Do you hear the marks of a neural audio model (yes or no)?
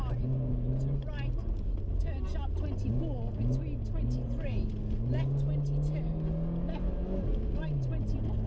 no